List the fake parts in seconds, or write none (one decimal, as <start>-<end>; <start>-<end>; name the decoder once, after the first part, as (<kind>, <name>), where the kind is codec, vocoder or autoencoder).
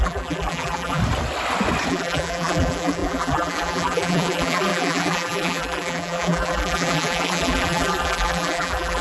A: 0.0-1.0 (vocoder, BigVGAN v2); 1.9-9.0